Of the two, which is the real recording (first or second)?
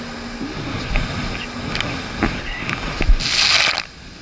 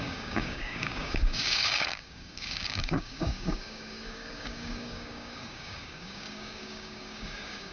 first